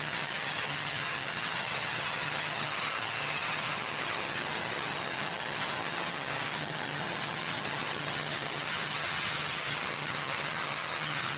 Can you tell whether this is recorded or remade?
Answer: remade